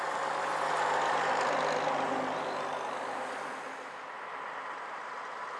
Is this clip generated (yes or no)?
no